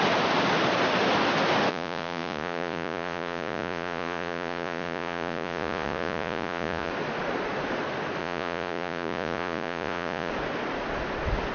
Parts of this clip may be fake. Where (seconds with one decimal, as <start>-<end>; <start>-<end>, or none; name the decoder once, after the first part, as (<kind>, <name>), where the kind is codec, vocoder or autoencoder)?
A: 1.7-6.9 (vocoder, Vocos); 8.2-10.3